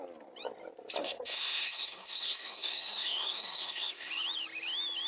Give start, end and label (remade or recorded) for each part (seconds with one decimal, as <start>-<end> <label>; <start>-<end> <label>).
0.0-1.0 recorded; 1.0-4.1 remade; 4.1-5.1 recorded